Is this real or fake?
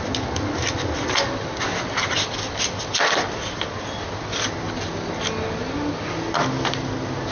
real